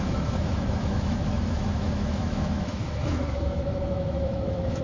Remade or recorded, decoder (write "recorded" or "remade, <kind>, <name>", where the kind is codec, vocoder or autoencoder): remade, autoencoder, DAC-VAE